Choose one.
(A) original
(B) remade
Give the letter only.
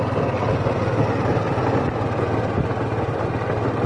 A